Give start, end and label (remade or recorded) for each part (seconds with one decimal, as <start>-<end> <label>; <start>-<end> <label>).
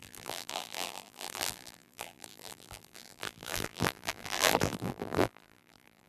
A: 0.0-6.1 remade